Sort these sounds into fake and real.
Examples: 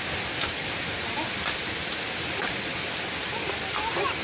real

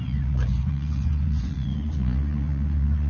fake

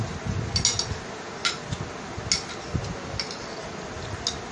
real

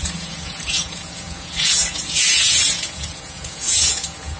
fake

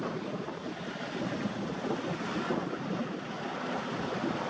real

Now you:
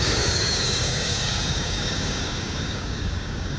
fake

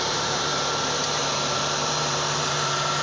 fake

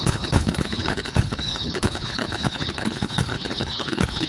fake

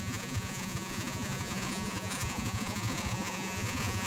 fake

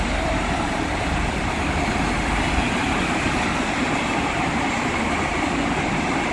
fake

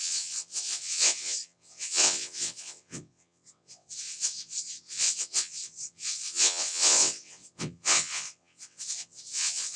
fake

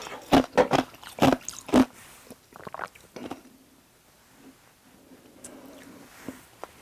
real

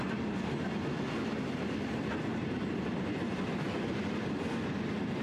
real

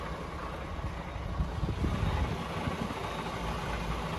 real